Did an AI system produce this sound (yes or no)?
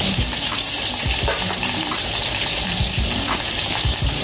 yes